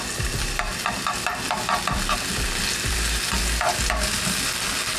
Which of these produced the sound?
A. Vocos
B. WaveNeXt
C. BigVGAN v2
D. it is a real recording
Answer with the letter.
D